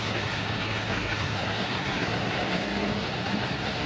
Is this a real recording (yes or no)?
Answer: no